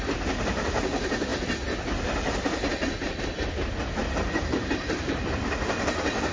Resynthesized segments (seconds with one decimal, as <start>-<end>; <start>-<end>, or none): 4.0-5.2